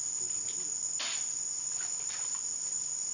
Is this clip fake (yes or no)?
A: no